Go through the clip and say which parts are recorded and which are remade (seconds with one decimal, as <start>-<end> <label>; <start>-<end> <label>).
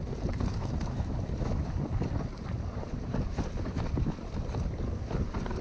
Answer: 0.0-0.5 recorded; 0.5-1.7 remade; 1.7-5.6 recorded